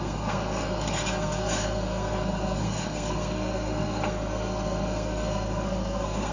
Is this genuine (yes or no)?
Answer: no